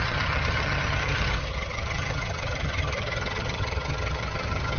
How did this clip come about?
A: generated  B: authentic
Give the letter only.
A